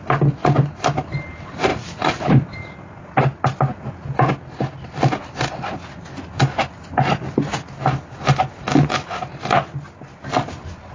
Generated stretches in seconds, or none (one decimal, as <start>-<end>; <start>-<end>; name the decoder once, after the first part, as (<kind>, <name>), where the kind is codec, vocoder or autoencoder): 1.7-3.2 (vocoder, BigVGAN v2)